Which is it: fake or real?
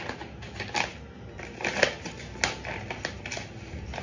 real